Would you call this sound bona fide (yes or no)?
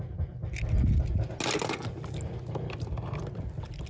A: yes